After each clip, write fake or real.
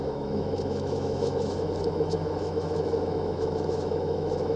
fake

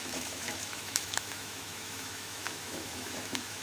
fake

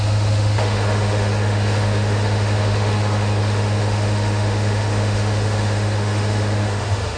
fake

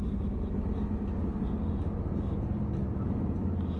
real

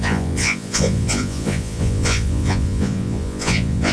fake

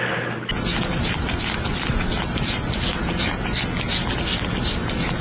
real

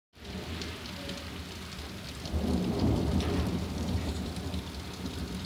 real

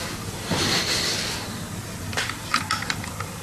real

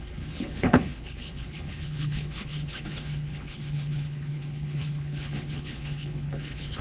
fake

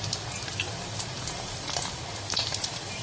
fake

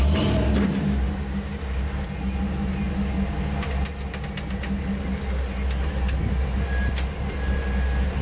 real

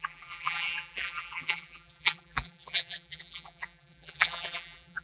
fake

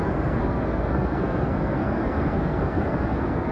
fake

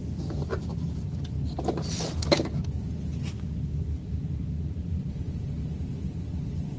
real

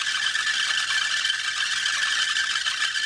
real